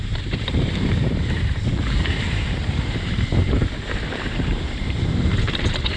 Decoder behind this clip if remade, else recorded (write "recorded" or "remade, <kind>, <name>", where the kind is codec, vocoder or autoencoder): remade, vocoder, BigVGAN v2